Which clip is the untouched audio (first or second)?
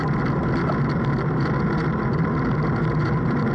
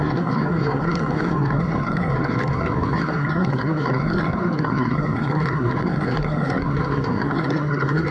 first